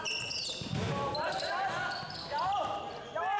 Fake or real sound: real